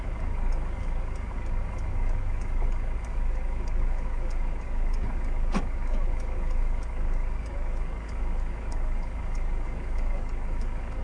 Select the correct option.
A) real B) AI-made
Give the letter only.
B